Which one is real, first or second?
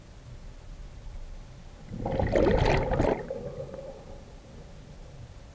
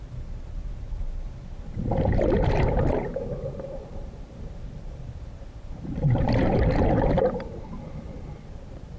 first